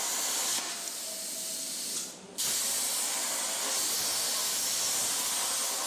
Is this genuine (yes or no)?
yes